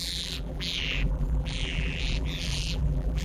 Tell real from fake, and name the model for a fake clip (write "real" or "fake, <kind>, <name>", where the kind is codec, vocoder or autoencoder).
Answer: fake, vocoder, BigVGAN v2